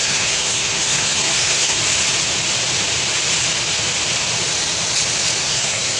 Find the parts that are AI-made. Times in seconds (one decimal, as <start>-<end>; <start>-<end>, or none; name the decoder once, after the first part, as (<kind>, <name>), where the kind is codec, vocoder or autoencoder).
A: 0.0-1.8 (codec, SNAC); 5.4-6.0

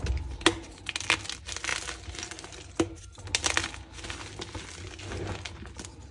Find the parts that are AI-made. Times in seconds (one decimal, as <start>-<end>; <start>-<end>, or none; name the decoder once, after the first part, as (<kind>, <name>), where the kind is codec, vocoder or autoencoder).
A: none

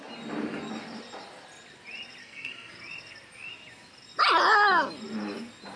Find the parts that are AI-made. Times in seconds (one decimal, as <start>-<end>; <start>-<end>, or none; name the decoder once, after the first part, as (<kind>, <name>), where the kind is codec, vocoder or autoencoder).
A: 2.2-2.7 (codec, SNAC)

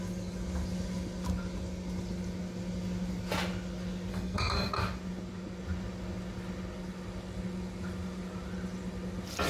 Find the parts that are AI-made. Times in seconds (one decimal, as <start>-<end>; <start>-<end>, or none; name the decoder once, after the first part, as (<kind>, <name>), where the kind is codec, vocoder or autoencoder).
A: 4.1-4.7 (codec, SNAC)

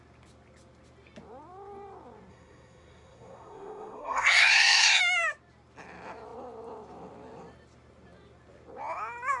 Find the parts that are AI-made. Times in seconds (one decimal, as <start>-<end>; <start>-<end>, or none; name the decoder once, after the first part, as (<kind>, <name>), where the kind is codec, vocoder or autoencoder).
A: 2.3-5.0 (codec, SNAC)

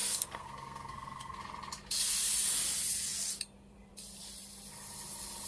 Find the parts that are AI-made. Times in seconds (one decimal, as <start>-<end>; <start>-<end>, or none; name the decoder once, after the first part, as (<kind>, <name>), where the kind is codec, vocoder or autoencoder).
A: 0.0-1.4 (codec, SNAC)

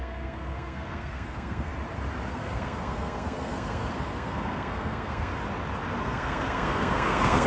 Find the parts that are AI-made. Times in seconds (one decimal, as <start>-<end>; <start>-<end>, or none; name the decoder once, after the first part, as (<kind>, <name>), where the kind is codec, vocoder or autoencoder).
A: 0.0-1.7 (codec, SNAC); 2.3-5.3; 6.0-7.5